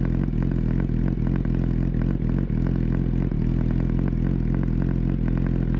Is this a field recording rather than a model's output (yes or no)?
yes